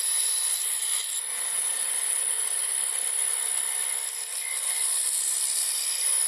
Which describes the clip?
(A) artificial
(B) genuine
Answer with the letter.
B